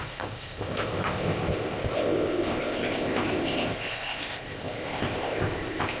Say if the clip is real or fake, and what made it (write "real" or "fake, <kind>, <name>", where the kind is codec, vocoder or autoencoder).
fake, codec, ZipCodec